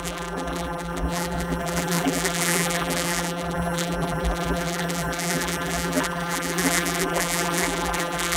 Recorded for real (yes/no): no